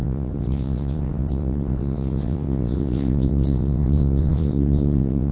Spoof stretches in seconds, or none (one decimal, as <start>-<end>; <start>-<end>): 0.0-5.3